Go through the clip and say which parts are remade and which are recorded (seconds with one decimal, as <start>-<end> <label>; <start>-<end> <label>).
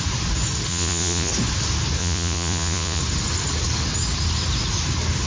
0.0-0.7 recorded; 0.7-1.3 remade; 1.3-2.0 recorded; 2.0-3.0 remade; 3.0-5.3 recorded